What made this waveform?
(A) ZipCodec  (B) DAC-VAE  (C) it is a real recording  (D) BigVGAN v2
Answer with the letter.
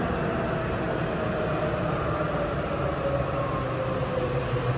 C